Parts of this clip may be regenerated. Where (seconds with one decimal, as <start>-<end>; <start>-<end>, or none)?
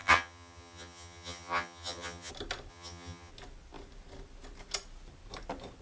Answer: 0.0-2.3; 2.7-3.3